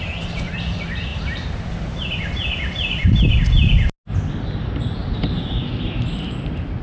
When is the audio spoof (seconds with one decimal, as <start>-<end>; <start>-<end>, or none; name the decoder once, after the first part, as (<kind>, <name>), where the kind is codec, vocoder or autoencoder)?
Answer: 1.1-3.4 (vocoder, BigVGAN v2); 5.0-5.6